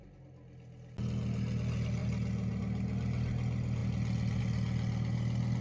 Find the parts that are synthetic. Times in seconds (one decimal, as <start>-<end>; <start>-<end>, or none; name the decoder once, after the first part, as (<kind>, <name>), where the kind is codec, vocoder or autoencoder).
none